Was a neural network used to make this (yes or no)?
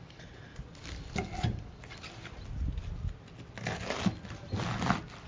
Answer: no